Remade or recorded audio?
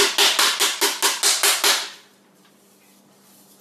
recorded